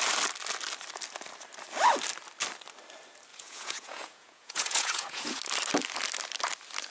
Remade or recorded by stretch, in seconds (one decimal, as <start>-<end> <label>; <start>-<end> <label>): 0.0-3.3 recorded; 3.3-5.4 remade; 5.4-6.9 recorded